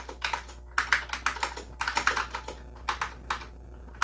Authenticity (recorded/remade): recorded